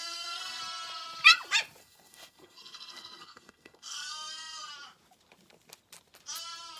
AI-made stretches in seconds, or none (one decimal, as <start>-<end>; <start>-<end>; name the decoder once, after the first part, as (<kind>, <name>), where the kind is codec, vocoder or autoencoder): 0.0-0.6 (codec, SNAC); 1.8-4.7